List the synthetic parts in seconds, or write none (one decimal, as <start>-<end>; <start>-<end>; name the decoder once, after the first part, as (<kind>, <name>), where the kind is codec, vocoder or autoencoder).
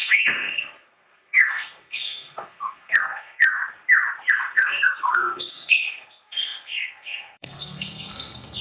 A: 0.0-3.6 (codec, SNAC); 4.3-8.6